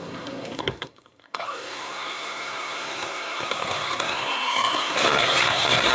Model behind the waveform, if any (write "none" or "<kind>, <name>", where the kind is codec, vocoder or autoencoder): codec, SNAC